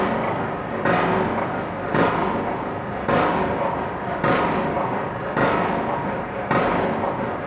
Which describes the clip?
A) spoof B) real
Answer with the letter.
B